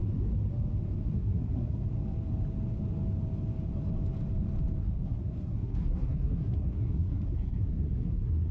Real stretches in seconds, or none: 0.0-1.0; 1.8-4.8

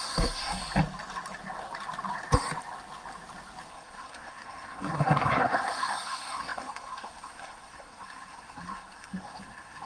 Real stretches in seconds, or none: 0.6-3.7

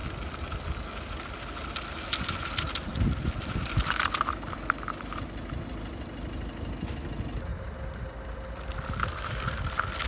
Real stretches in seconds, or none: 0.0-9.0; 9.6-10.1

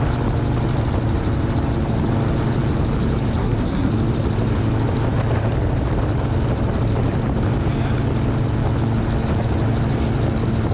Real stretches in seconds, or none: 0.0-3.4; 3.9-10.7

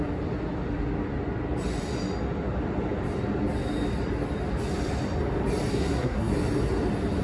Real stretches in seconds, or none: 0.0-5.7; 6.3-7.2

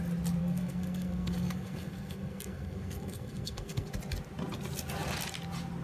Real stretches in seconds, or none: 0.0-0.4; 3.9-5.8

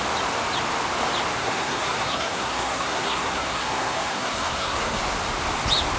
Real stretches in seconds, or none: 0.0-1.4; 5.0-6.0